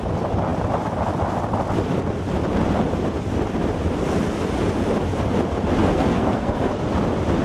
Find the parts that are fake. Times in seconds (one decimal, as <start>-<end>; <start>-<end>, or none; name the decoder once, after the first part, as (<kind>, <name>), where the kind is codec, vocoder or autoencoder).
5.8-6.8 (codec, SNAC)